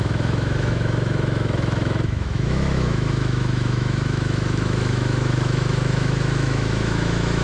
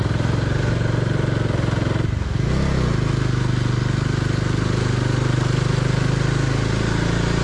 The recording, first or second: second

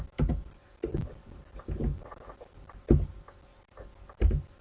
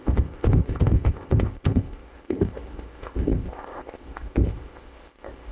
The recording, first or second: first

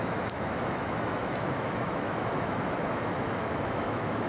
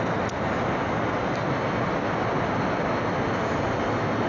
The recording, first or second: second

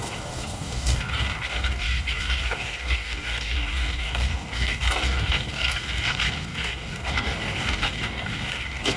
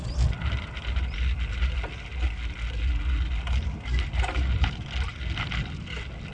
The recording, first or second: second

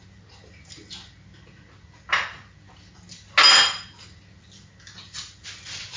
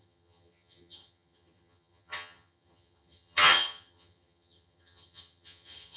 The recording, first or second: first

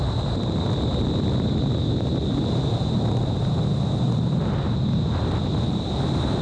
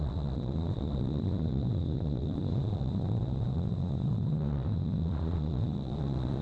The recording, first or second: first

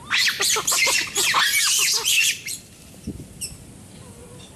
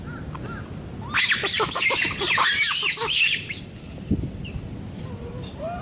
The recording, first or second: second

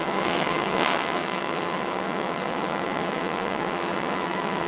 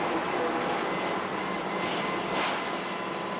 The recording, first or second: second